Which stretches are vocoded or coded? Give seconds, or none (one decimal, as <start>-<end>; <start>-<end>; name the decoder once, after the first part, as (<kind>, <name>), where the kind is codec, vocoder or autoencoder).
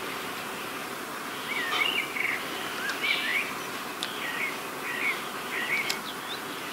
0.8-2.2 (vocoder, BigVGAN v2)